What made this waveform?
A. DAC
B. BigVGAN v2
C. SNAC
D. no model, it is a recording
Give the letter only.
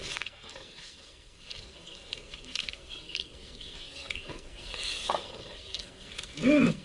C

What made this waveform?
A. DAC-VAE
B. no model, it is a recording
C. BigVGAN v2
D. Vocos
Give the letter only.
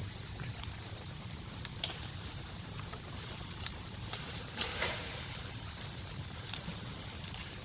C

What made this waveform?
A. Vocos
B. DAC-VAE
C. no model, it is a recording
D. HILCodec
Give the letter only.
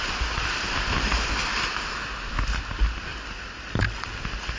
C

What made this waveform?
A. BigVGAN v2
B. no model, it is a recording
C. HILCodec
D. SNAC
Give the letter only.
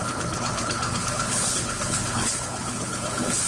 C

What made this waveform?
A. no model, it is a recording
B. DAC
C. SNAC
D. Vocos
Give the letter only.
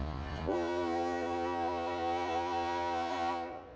D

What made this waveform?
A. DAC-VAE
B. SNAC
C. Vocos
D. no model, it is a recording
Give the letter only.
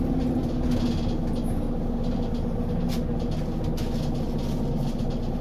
D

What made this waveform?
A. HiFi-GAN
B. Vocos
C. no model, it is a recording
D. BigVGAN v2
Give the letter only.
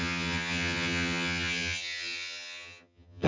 A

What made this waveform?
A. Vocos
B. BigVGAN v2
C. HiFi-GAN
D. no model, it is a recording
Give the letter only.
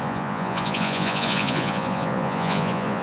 A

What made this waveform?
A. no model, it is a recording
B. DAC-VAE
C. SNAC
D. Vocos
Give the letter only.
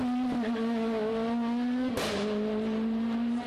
A